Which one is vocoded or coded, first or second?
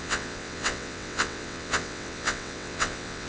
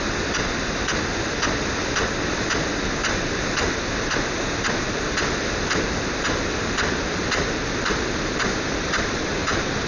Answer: first